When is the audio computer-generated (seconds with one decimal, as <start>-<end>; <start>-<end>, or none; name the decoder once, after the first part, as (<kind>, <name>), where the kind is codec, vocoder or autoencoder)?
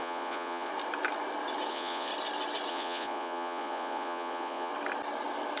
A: 0.0-0.7 (vocoder, Vocos); 1.7-2.1; 2.7-4.7